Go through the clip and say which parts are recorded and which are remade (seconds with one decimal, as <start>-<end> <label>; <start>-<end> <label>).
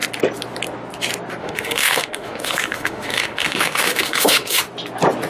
0.0-1.4 recorded; 1.4-4.6 remade; 4.6-5.3 recorded